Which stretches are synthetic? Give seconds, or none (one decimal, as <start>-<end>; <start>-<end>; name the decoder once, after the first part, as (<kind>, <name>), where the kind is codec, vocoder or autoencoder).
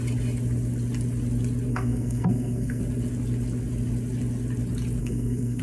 1.7-2.8 (codec, SNAC); 5.0-5.6